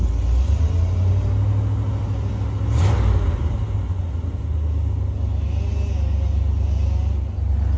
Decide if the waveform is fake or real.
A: real